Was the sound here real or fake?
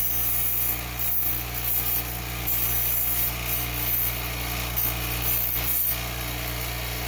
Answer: real